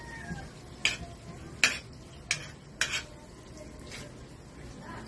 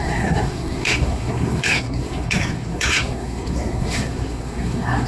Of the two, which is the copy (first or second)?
second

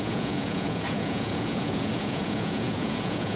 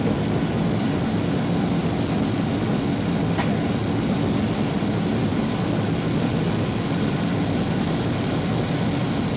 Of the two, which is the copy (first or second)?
first